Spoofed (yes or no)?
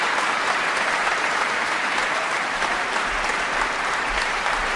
yes